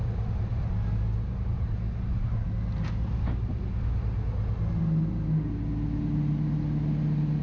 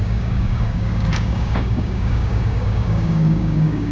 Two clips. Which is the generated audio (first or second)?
second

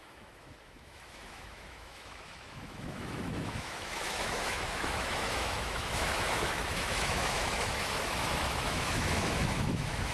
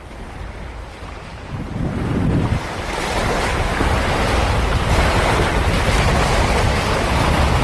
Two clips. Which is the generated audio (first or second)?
first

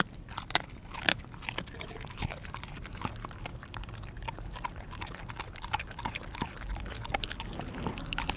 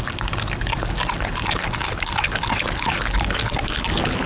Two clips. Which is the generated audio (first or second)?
first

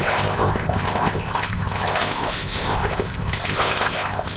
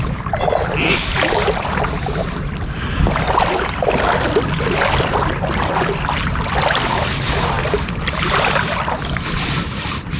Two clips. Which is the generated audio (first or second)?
first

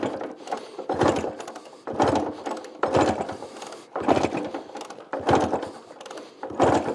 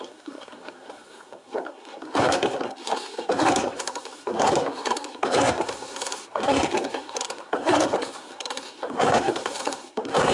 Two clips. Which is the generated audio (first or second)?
second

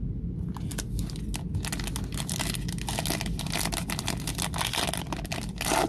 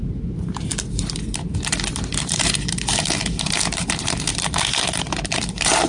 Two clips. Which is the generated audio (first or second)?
second